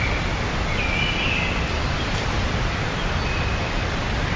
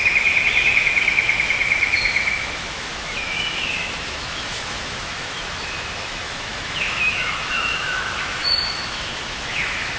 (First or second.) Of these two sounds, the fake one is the second